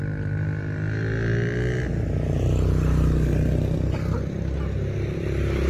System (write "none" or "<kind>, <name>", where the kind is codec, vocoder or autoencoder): none